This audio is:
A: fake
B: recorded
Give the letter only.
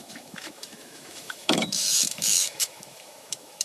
A